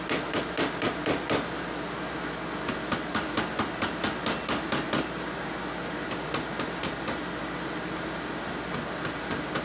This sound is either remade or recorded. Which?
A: recorded